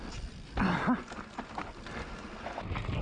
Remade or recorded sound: recorded